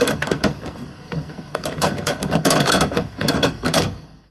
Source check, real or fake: fake